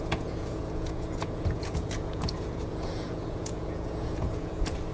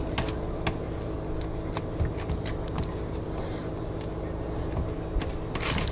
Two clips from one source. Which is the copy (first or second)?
first